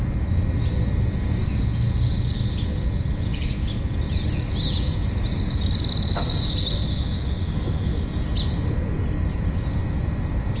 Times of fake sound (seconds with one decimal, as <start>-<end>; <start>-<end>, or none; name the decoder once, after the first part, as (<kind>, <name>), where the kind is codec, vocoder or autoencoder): none